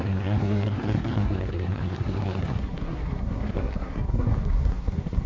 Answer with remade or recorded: remade